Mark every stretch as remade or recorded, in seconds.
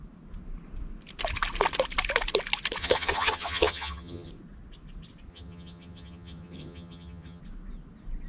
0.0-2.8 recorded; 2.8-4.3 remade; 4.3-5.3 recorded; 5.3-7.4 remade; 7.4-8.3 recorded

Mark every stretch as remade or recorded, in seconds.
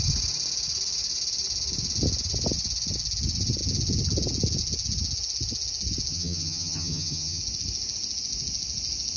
0.0-6.1 recorded; 6.1-7.4 remade; 7.4-9.2 recorded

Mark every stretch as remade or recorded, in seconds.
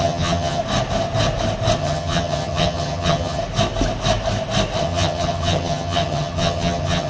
0.0-0.6 remade; 0.6-1.8 recorded; 1.8-3.4 remade; 3.4-4.8 recorded; 4.8-7.1 remade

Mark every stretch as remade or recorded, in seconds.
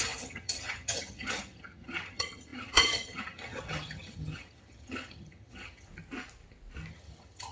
0.0-5.9 remade; 5.9-6.9 recorded; 6.9-7.5 remade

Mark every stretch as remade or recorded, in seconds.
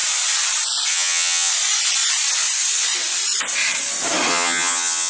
0.0-0.9 recorded; 0.9-1.5 remade; 1.5-4.3 recorded; 4.3-5.1 remade